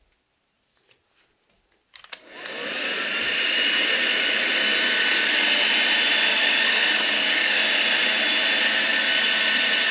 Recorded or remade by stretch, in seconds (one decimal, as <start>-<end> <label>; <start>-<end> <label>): 0.0-6.3 recorded; 6.3-7.6 remade; 7.6-9.9 recorded